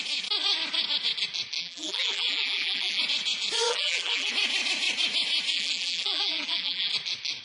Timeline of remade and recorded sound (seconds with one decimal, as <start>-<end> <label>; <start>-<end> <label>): 0.0-1.6 recorded; 1.6-3.0 remade; 3.0-3.7 recorded; 3.7-4.3 remade; 4.3-5.5 recorded; 5.5-6.9 remade; 6.9-7.4 recorded